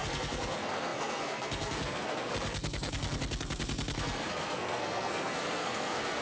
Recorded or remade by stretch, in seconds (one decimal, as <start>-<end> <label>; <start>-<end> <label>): 0.0-6.2 remade